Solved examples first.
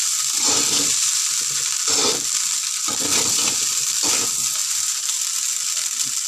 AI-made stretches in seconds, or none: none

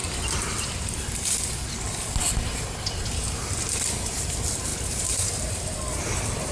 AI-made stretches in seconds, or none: none

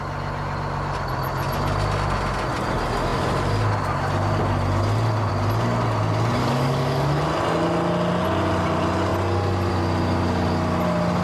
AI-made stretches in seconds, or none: 6.4-7.2 (codec, DAC)

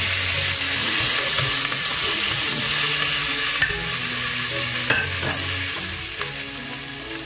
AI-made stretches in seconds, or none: 0.8-2.7 (vocoder, Vocos)

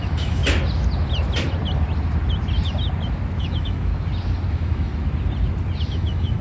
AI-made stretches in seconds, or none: 0.0-0.4 (autoencoder, DAC-VAE); 3.4-3.9; 4.5-4.9; 5.9-6.4